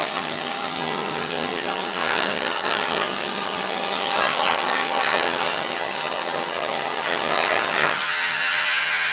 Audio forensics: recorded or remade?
remade